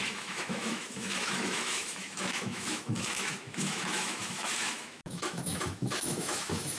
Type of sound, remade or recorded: remade